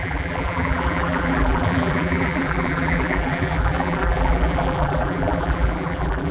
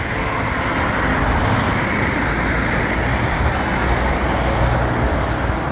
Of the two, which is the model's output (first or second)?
first